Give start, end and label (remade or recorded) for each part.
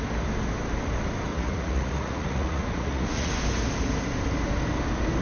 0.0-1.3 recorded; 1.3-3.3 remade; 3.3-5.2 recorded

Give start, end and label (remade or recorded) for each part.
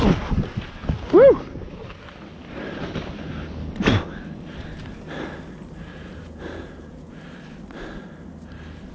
0.0-5.9 recorded; 5.9-7.1 remade; 7.1-8.9 recorded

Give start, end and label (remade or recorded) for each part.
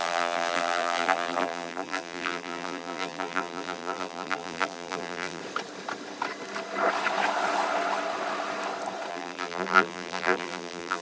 0.0-5.4 remade; 5.4-9.1 recorded; 9.1-11.0 remade